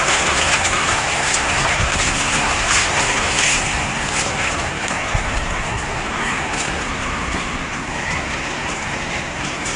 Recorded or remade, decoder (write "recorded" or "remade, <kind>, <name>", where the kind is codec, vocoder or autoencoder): remade, codec, SNAC